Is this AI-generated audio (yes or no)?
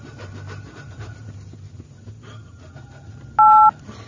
no